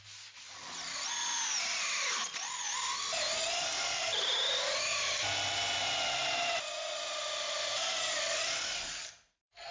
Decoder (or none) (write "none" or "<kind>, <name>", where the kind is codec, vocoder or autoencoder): none